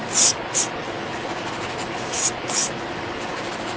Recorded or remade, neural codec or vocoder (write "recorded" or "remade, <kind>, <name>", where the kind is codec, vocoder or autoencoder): recorded